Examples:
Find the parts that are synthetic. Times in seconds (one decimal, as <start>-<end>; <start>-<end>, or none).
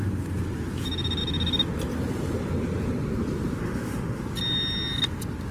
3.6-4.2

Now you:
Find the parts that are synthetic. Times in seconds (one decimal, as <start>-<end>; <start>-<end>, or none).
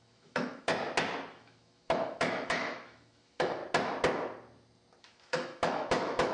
0.0-0.7; 1.3-3.6; 5.0-6.3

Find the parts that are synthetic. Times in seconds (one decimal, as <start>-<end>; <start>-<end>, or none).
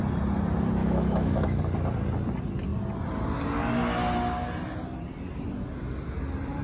0.8-1.6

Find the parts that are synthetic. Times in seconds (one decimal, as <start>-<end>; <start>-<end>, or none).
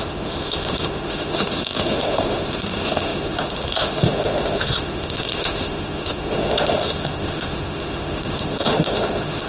0.0-9.5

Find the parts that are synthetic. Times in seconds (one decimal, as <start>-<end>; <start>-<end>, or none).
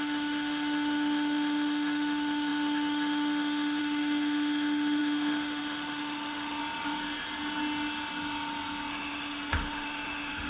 0.0-6.6; 8.9-10.5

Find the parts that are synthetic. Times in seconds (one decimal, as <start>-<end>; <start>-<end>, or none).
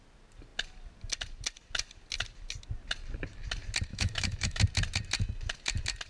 3.9-4.6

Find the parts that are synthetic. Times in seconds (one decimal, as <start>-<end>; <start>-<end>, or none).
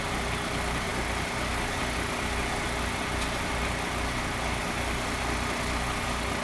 none